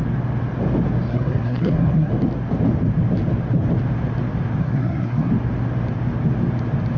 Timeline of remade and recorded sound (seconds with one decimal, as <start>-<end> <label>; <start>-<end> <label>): 0.0-1.1 recorded; 1.1-2.1 remade; 2.1-4.6 recorded; 4.6-5.3 remade; 5.3-7.0 recorded